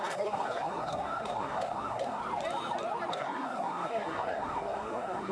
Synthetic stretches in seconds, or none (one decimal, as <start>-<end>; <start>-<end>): 0.0-2.2; 3.1-5.3